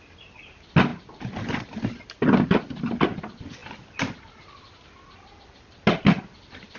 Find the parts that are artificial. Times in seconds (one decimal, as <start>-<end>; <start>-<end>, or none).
none